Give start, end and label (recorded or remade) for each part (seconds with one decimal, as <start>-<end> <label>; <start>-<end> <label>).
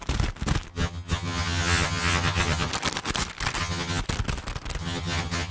0.0-0.7 recorded; 0.7-2.7 remade; 2.7-3.6 recorded; 3.6-4.0 remade; 4.0-4.8 recorded; 4.8-5.5 remade